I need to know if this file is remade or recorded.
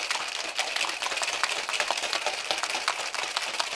recorded